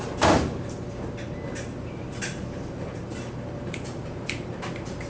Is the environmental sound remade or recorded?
remade